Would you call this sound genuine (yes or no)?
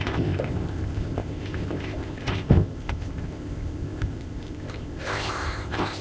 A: no